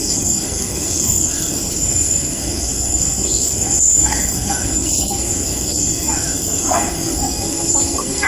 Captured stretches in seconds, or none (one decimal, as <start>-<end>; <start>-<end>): none